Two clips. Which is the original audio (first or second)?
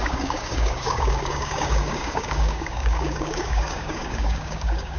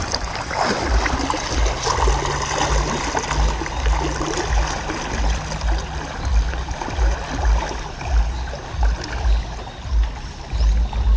second